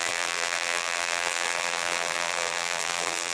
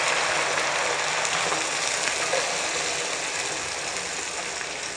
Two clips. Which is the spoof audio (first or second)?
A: first